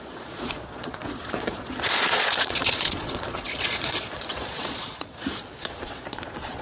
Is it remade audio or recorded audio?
remade